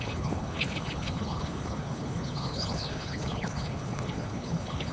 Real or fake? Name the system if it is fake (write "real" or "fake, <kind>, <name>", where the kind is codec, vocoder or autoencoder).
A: fake, codec, HILCodec